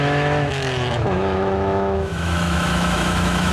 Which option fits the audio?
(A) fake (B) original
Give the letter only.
A